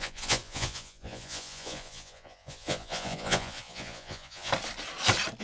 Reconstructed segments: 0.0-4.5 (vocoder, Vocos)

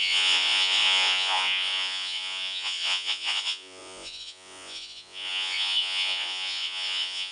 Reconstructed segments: 0.0-7.3 (vocoder, Vocos)

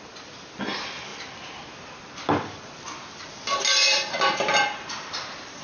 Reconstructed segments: none

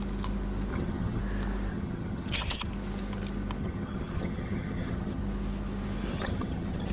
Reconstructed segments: 0.7-1.2 (vocoder, HiFi-GAN); 1.7-2.7; 3.6-5.2; 6.1-6.9

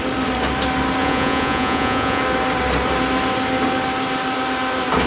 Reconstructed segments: 1.0-2.2 (vocoder, Vocos)